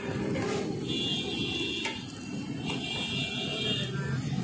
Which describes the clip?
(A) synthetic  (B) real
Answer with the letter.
B